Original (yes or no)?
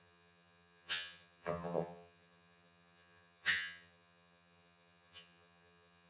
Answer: no